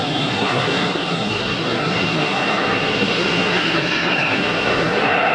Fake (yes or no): yes